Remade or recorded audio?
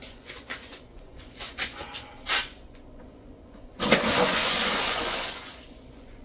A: remade